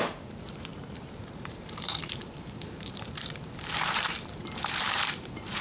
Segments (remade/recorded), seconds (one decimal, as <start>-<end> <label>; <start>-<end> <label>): 0.0-5.6 remade